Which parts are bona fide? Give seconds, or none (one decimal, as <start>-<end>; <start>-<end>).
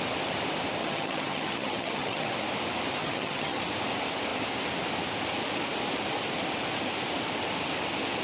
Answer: 0.0-0.8; 2.3-3.0; 3.6-8.2